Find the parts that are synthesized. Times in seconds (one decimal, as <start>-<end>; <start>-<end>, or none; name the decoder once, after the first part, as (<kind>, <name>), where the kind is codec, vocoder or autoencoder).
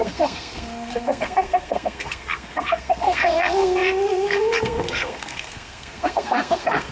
0.0-6.9 (codec, SNAC)